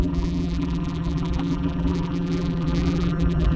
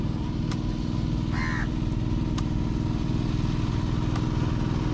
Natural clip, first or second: second